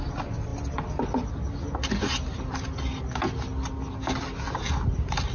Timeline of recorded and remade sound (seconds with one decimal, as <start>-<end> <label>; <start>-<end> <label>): 0.0-5.3 recorded